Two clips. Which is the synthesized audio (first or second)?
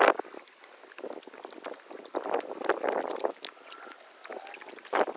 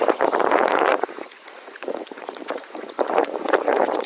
second